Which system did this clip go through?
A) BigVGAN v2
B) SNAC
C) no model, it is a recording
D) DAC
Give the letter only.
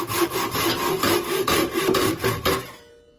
C